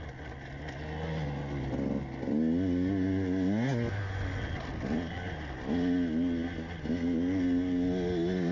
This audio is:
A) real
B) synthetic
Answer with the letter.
A